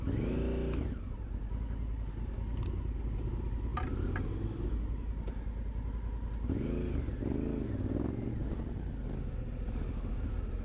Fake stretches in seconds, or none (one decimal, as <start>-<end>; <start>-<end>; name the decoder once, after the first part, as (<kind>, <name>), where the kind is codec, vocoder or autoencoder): none